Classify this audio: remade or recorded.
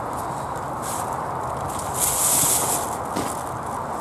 recorded